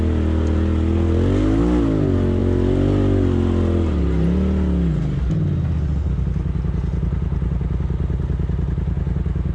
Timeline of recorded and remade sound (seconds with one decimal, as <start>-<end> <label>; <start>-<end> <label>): 0.0-9.5 recorded